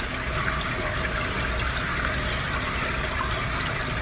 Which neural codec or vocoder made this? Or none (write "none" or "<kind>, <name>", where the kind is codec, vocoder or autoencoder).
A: none